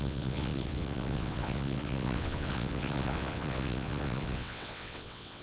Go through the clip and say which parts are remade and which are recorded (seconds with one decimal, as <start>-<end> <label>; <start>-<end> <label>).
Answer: 0.0-5.4 remade

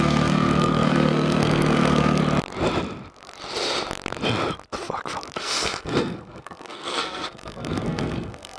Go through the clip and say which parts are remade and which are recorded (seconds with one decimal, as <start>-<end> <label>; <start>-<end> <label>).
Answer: 0.0-2.2 remade; 2.2-5.4 recorded; 5.4-8.6 remade

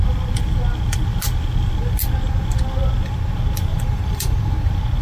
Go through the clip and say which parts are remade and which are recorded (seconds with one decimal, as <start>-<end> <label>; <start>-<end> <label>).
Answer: 0.0-3.7 recorded; 3.7-4.5 remade; 4.5-5.0 recorded

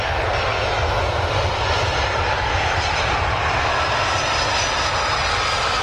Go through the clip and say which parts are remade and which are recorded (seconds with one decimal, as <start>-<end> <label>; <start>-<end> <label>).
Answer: 0.0-5.8 recorded

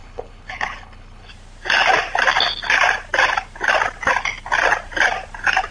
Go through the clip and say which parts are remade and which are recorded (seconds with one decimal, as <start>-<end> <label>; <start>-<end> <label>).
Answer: 0.0-1.3 remade; 1.3-5.7 recorded

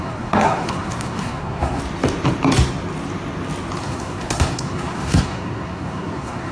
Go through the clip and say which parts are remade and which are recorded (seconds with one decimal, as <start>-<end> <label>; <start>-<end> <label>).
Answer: 0.0-1.8 remade; 1.8-3.8 recorded; 3.8-6.5 remade

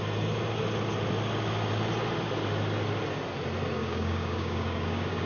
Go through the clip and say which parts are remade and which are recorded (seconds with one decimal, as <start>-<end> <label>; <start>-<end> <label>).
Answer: 0.0-3.8 recorded; 3.8-5.3 remade

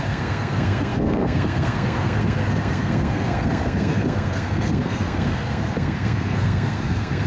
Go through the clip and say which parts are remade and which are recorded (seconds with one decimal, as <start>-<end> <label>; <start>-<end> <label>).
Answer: 0.0-7.3 remade